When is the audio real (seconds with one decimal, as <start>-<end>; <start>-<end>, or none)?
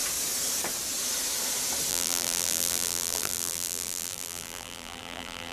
0.0-1.9